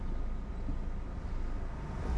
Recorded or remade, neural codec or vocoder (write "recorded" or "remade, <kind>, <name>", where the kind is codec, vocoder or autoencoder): recorded